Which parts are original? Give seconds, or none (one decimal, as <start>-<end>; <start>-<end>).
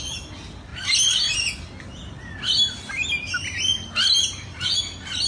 0.0-5.3